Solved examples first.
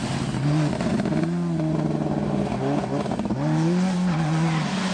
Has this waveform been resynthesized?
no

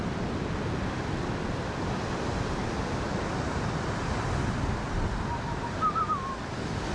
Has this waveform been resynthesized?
no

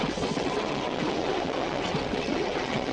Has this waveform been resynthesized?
yes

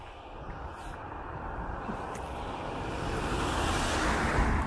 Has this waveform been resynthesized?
no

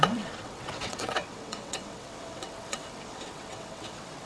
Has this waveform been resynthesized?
yes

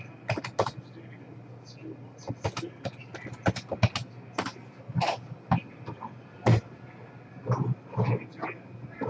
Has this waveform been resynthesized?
no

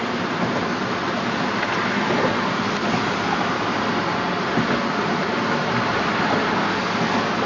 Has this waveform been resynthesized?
no